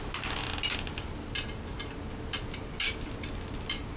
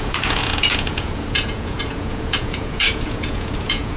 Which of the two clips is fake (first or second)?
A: second